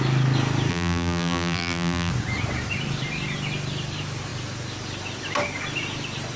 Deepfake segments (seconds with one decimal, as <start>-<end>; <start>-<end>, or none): 0.7-2.1